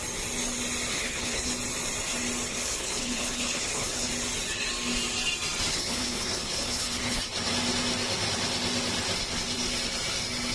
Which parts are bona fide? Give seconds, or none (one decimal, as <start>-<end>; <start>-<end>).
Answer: 0.0-0.9; 1.5-2.5; 4.1-5.7; 7.2-10.5